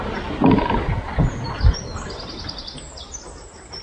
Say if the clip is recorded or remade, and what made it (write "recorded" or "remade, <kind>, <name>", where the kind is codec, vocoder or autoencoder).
recorded